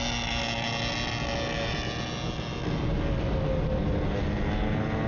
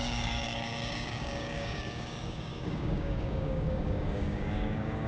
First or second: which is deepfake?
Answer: second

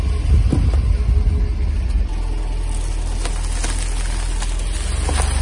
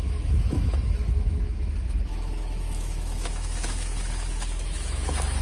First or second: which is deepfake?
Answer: second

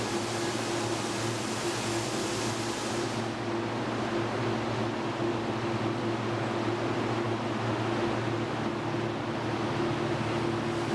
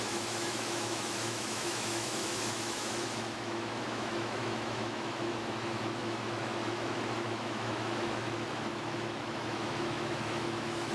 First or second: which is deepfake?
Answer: second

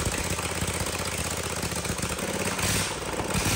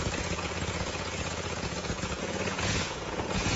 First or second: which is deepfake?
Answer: second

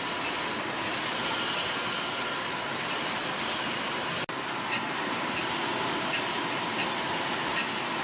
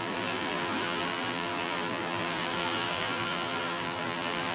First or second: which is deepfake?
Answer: second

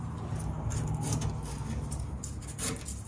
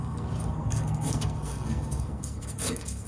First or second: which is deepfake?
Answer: second